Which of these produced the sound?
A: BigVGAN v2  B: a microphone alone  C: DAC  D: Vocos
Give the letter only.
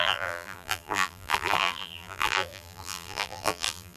A